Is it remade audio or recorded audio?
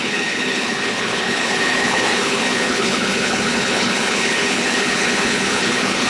remade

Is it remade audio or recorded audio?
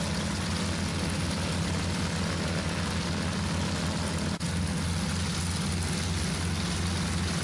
recorded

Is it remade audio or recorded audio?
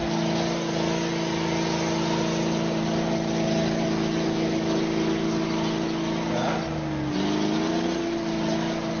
recorded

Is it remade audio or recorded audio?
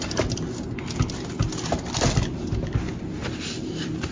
recorded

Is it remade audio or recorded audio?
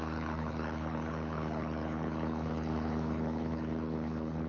remade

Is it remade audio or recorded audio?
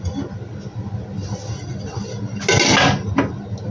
recorded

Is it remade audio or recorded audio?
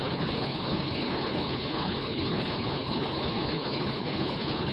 remade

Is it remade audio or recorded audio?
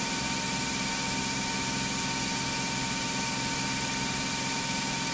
recorded